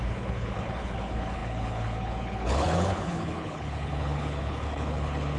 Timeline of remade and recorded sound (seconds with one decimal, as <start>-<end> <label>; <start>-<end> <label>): 0.0-5.4 remade